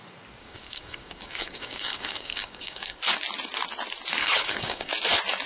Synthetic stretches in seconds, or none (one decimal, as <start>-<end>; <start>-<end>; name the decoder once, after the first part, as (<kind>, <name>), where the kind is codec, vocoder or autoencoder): 0.4-3.0 (codec, DAC); 4.2-4.9